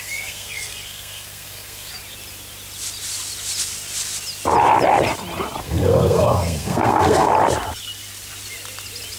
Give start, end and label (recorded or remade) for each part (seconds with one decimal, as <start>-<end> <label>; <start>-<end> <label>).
0.0-1.9 remade; 1.9-5.6 recorded; 5.6-7.3 remade; 7.3-9.2 recorded